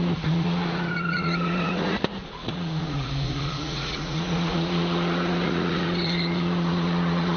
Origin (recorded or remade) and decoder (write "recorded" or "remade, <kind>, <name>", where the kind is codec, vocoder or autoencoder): remade, vocoder, Vocos